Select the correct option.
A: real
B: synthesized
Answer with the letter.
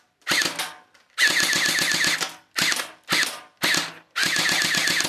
A